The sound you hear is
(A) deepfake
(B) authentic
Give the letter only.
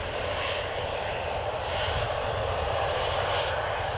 B